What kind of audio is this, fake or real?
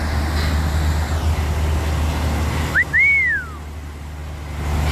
real